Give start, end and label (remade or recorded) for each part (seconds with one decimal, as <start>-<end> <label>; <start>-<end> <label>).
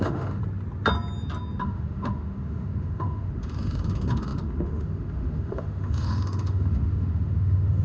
0.0-0.4 remade; 0.4-1.6 recorded; 1.6-7.8 remade